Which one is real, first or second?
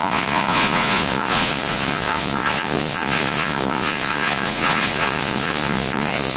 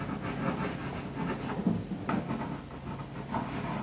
second